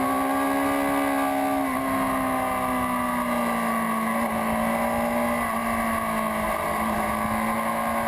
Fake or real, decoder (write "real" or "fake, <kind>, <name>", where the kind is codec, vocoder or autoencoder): real